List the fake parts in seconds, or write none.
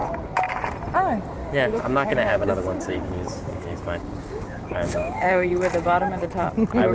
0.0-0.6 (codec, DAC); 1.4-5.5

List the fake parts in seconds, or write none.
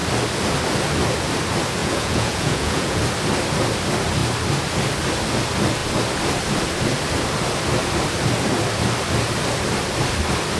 1.8-3.0 (vocoder, Vocos)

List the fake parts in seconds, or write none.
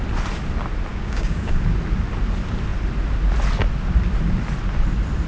0.9-1.6 (codec, DAC)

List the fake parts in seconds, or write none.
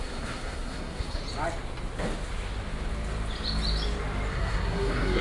0.0-1.2 (codec, SNAC); 4.3-5.2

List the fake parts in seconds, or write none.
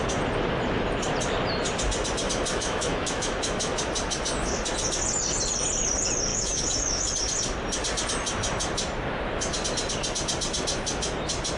2.5-3.8 (autoencoder, DAC-VAE); 6.3-7.1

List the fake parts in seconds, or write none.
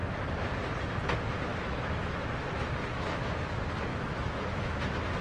0.0-0.5 (autoencoder, DAC-VAE); 1.5-2.3; 2.9-3.5; 3.9-5.2